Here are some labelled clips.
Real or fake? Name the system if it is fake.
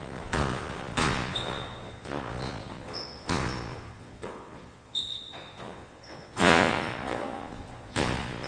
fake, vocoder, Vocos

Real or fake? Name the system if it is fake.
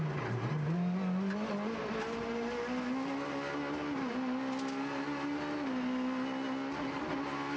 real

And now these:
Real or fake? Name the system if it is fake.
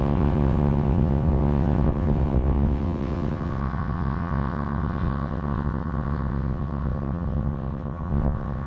fake, vocoder, WaveNeXt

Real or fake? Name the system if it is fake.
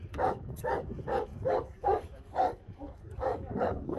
fake, codec, DAC